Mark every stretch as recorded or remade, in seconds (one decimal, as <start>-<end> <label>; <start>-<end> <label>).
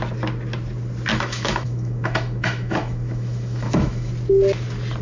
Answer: 0.0-1.1 recorded; 1.1-4.1 remade; 4.1-5.0 recorded